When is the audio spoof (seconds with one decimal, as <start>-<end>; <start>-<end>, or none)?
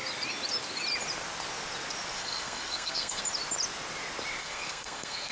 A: 2.1-3.2; 4.4-5.3